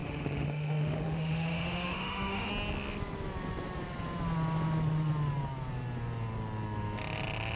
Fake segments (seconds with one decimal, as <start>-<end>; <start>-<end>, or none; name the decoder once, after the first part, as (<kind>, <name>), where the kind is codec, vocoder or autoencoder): 0.0-2.5 (autoencoder, DAC-VAE)